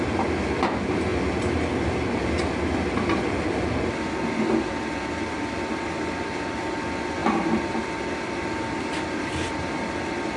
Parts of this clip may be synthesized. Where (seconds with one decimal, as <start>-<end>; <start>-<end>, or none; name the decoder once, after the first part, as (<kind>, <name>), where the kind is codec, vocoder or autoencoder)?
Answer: none